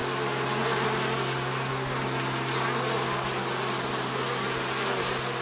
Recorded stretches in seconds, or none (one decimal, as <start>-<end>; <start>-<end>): 0.0-5.4